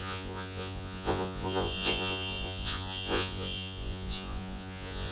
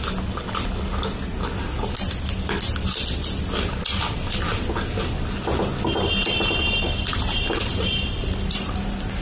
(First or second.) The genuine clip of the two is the second